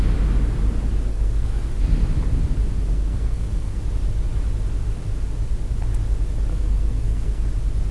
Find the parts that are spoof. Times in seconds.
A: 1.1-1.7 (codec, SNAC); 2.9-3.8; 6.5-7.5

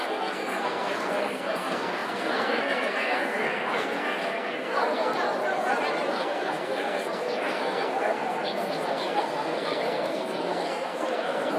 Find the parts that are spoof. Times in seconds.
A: 0.0-5.1 (codec, SNAC); 6.1-11.6

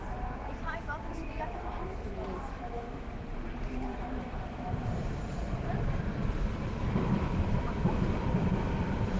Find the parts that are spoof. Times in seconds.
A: 1.2-3.1 (autoencoder, DAC-VAE); 3.9-4.9; 6.6-7.8

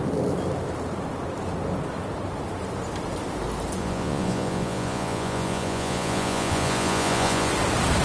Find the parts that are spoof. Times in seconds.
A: 3.8-7.5 (vocoder, Vocos)

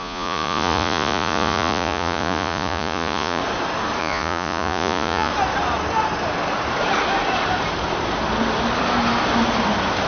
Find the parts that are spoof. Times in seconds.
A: 0.0-3.4 (vocoder, Vocos); 4.0-5.3